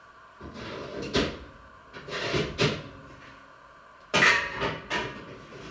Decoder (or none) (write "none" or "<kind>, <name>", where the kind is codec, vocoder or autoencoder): vocoder, BigVGAN v2